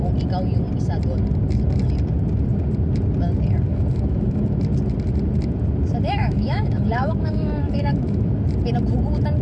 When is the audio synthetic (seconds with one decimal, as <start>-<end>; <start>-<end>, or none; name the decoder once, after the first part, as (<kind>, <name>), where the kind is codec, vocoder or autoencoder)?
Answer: 3.7-4.6 (autoencoder, DAC-VAE); 6.2-8.3